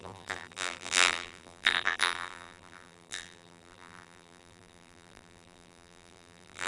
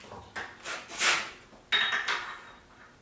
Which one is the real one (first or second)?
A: second